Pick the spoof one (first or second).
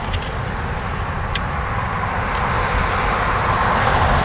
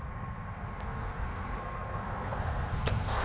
second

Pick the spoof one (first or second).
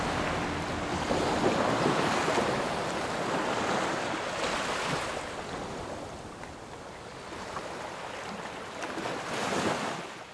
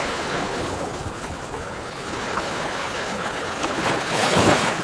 second